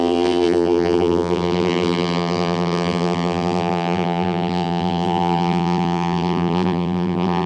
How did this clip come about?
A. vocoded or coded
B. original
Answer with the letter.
A